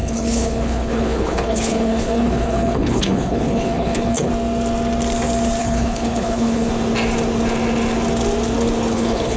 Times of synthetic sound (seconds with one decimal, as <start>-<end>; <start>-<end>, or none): 0.0-4.3; 5.6-6.7; 8.9-9.4